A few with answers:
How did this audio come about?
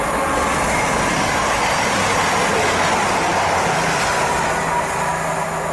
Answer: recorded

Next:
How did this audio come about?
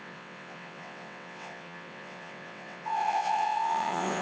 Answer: remade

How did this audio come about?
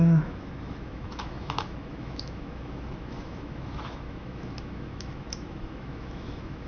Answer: remade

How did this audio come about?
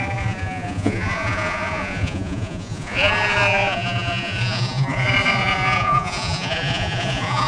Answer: remade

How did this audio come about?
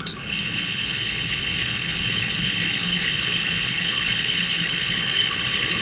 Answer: remade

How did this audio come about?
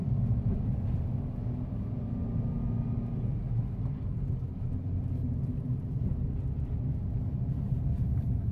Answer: recorded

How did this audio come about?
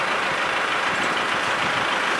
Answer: remade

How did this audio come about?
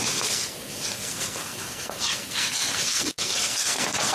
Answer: remade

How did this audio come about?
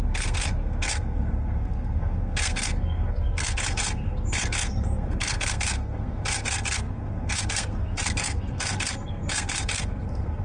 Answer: remade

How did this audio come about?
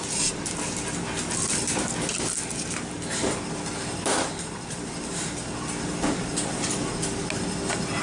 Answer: recorded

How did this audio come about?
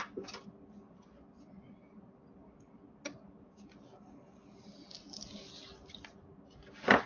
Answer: recorded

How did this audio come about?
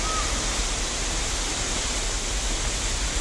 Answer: recorded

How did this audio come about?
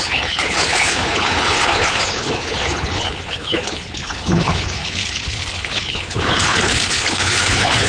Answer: remade